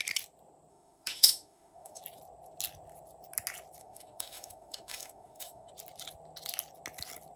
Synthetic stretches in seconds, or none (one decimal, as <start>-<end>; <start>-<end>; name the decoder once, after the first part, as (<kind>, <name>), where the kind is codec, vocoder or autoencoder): 0.7-2.0 (autoencoder, DAC-VAE); 3.8-5.7